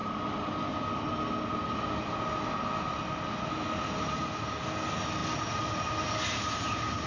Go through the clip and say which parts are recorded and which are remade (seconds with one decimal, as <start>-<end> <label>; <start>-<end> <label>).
0.0-7.1 recorded